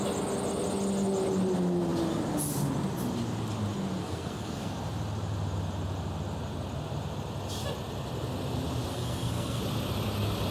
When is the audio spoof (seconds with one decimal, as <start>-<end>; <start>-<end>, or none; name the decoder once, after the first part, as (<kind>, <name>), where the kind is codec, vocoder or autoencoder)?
4.0-4.7 (codec, SNAC); 8.9-9.6